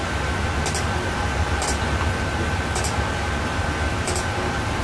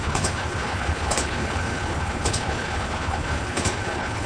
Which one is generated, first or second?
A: second